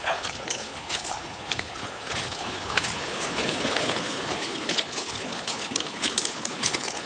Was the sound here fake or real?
fake